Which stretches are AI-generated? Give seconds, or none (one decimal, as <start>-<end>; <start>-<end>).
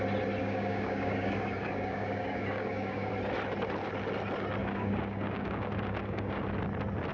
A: 0.4-3.1; 4.6-6.4